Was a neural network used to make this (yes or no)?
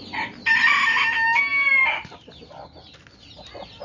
no